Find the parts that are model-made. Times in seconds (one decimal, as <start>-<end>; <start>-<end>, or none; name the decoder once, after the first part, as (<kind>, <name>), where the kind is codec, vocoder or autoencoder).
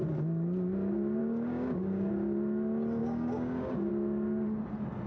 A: 1.2-2.1 (codec, DAC); 3.0-3.9